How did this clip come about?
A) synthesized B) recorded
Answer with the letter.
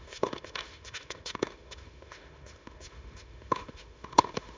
A